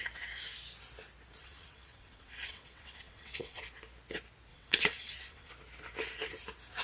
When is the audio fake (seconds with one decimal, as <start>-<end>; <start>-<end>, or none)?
1.4-3.6; 4.5-5.5